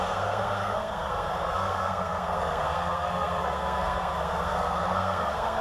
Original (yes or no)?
no